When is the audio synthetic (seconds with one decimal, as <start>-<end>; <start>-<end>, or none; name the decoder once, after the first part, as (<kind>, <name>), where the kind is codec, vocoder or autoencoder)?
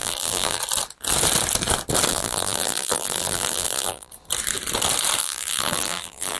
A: 0.0-0.6 (vocoder, BigVGAN v2); 2.1-4.1; 5.2-6.4